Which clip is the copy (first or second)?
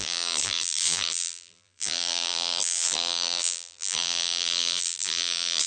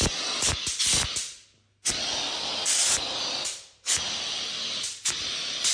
first